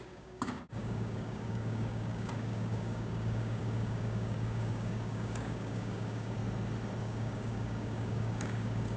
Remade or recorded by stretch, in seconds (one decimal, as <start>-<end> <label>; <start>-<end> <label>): 0.0-6.4 remade; 6.4-7.0 recorded; 7.0-9.0 remade